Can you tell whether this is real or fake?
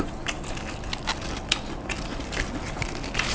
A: real